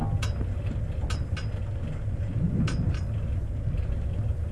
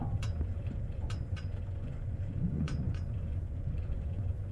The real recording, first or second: first